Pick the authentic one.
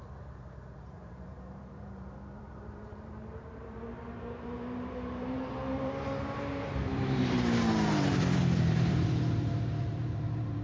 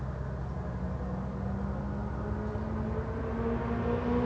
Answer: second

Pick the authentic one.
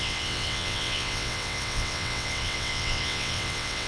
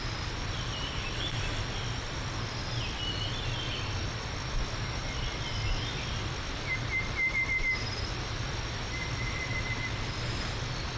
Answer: second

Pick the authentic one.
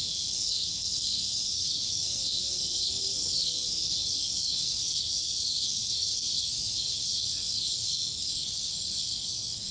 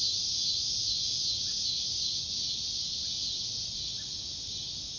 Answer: second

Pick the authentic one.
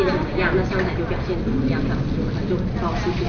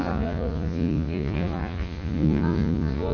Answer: first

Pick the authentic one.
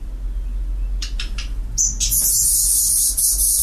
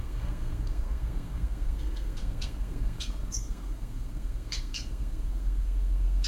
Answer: first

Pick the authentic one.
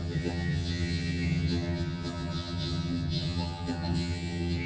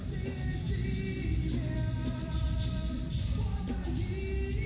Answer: second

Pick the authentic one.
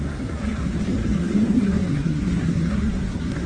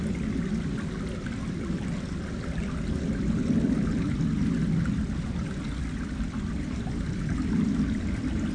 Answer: second